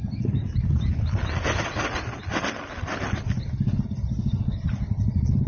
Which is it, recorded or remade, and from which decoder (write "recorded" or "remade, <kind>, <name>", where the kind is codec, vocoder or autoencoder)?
recorded